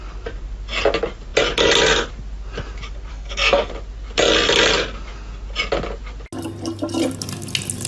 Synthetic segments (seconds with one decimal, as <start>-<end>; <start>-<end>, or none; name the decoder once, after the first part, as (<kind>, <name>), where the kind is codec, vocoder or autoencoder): 3.1-3.7 (codec, SNAC)